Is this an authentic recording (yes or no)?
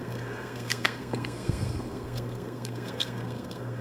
no